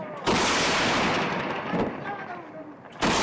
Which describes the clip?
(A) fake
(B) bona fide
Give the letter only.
B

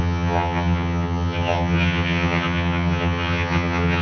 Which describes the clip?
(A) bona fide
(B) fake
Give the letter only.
B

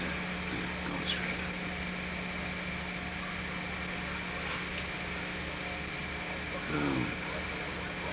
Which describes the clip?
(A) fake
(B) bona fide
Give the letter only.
B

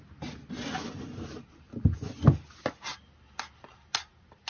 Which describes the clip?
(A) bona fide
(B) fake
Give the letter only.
A